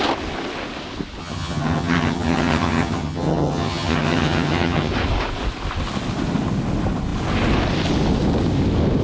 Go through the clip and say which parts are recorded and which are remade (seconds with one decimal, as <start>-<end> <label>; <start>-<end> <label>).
0.0-1.2 recorded; 1.2-4.9 remade; 4.9-9.0 recorded